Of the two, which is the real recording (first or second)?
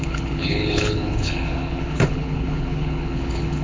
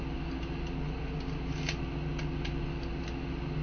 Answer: second